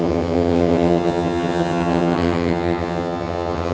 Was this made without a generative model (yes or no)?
no